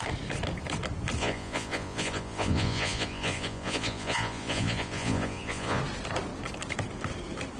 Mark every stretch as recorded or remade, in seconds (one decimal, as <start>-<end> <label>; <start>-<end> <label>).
0.0-1.2 recorded; 1.2-5.8 remade; 5.8-7.6 recorded

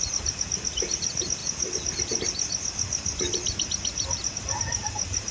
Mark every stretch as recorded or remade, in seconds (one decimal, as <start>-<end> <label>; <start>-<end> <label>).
0.0-5.3 recorded

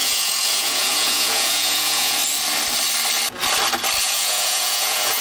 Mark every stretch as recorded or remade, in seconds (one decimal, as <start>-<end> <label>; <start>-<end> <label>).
0.0-2.2 remade; 2.2-4.0 recorded; 4.0-5.2 remade

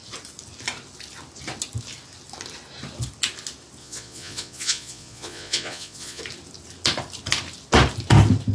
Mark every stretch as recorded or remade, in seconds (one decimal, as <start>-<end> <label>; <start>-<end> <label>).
0.0-3.8 recorded; 3.8-6.2 remade; 6.2-8.5 recorded

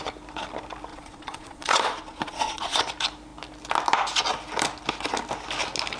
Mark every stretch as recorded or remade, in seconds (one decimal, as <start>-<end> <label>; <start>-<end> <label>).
0.0-0.9 recorded; 0.9-2.8 remade; 2.8-6.0 recorded

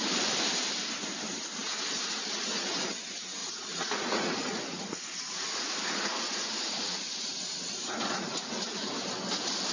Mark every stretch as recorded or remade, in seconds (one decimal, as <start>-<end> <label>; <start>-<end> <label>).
0.0-3.4 recorded; 3.4-8.5 remade; 8.5-9.7 recorded

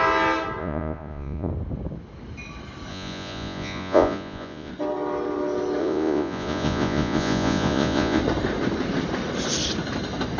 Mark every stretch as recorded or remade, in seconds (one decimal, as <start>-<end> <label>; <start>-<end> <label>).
0.0-0.6 recorded; 0.6-1.5 remade; 1.5-2.9 recorded; 2.9-4.7 remade; 4.7-5.8 recorded; 5.8-8.2 remade; 8.2-10.4 recorded